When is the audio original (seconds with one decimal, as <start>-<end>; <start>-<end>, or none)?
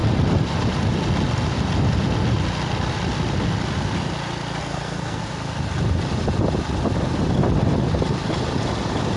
0.0-4.6; 5.2-9.2